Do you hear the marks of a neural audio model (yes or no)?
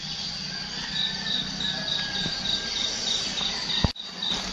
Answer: no